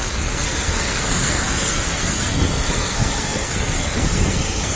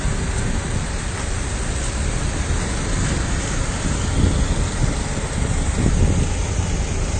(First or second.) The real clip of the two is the second